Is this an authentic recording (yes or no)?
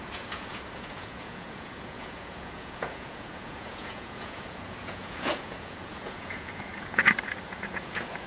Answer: no